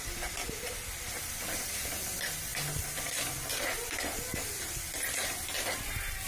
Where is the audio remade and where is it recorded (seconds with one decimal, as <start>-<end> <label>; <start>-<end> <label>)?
0.0-6.3 recorded